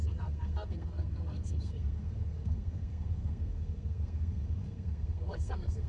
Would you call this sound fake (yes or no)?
yes